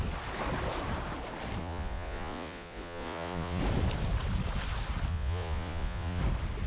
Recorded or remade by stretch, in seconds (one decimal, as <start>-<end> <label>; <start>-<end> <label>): 0.0-1.6 recorded; 1.6-3.6 remade; 3.6-5.1 recorded; 5.1-6.2 remade; 6.2-6.7 recorded